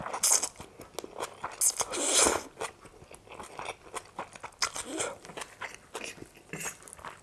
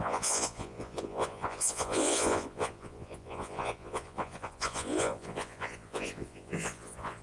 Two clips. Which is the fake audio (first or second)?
second